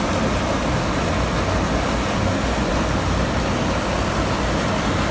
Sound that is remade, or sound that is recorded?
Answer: recorded